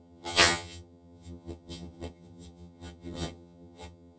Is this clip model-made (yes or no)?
yes